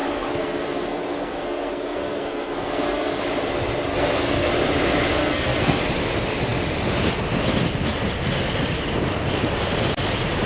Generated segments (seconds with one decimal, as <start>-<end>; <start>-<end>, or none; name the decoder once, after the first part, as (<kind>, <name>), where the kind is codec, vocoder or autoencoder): 0.0-3.2 (codec, SNAC); 3.9-4.5; 5.2-5.8